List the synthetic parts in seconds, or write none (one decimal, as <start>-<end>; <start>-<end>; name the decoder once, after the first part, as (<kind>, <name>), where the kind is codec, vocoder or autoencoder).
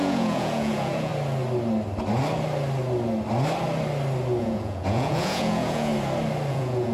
0.0-1.1 (vocoder, Vocos); 4.4-5.9; 6.5-6.9